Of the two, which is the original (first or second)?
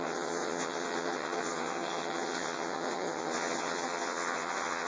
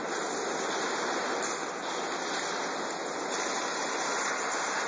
second